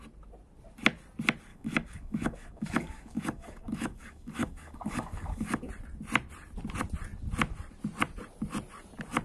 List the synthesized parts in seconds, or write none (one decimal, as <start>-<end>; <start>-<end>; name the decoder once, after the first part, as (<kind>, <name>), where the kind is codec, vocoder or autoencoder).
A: 1.5-5.7 (codec, DAC)